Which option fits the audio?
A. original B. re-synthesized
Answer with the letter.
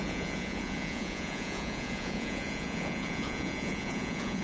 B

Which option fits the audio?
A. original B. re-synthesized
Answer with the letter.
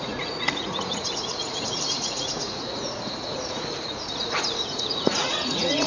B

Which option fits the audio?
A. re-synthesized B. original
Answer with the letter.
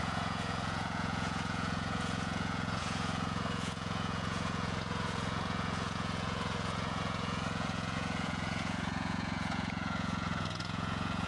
A